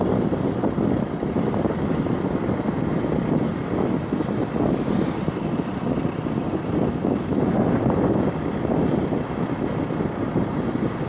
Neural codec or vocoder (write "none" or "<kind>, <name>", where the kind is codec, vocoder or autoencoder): none